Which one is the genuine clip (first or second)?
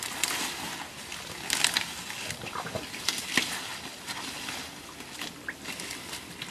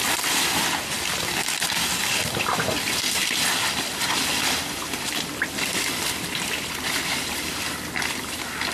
first